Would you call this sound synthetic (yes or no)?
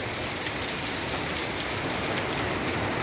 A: no